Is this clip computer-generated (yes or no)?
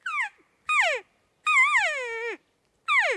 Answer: no